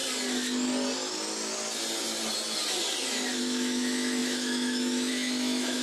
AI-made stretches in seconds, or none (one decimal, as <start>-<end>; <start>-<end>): 3.4-5.8